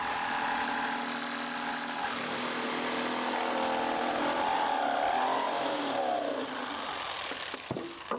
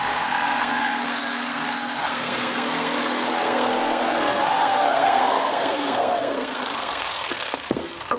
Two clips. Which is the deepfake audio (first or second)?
second